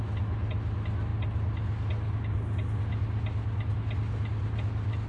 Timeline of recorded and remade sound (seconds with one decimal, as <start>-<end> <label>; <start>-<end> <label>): 0.0-5.1 recorded